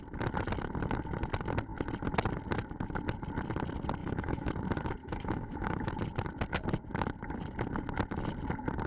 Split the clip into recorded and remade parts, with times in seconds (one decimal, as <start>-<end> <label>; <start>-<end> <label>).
0.0-4.0 recorded; 4.0-4.5 remade; 4.5-5.0 recorded; 5.0-5.9 remade; 5.9-8.9 recorded